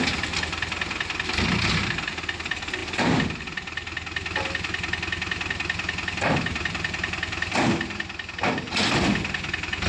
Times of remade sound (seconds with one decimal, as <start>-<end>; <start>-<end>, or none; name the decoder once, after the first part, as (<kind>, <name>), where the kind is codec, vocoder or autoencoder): none